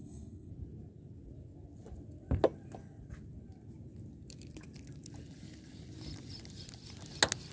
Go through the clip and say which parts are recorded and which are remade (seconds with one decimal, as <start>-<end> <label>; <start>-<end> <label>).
0.0-0.5 remade; 0.5-7.5 recorded